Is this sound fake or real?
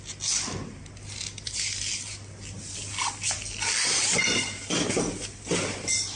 real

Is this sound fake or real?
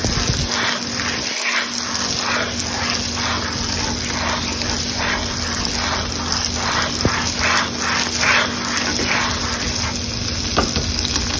real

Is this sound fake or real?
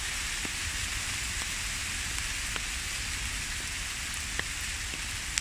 real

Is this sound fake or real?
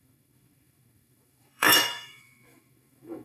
fake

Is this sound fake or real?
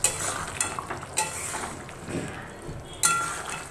real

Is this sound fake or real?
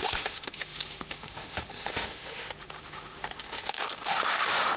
fake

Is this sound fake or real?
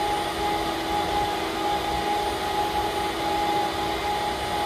real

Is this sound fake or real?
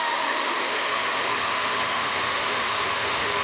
fake